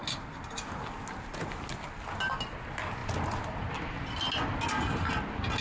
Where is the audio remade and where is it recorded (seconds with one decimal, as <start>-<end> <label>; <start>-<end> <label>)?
0.0-5.6 recorded